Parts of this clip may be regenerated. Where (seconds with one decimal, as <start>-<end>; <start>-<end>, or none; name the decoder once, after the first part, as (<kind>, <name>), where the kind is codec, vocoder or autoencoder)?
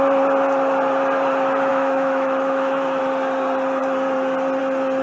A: 1.7-3.0 (autoencoder, DAC-VAE)